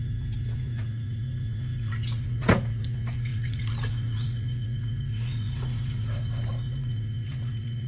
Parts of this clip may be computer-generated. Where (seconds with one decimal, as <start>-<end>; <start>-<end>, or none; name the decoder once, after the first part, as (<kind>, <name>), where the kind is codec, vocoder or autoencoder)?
0.0-7.9 (vocoder, Vocos)